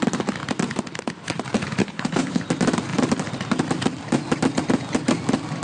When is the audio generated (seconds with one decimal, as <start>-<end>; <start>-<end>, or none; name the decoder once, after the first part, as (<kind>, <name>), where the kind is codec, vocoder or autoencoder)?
1.8-2.4 (codec, HILCodec)